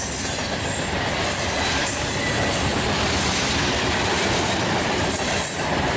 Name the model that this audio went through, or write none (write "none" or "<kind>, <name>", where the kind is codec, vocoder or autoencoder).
none